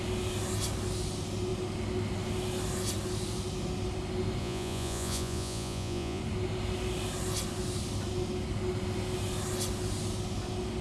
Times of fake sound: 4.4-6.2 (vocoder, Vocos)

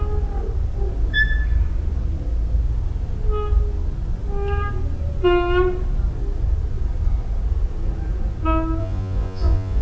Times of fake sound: 8.8-9.8 (vocoder, Vocos)

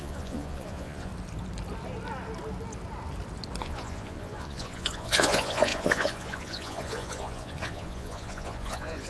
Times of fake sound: 0.0-1.1 (vocoder, Vocos); 3.6-9.1

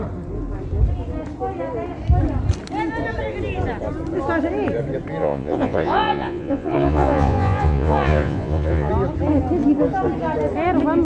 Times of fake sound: 5.2-8.9 (vocoder, Vocos)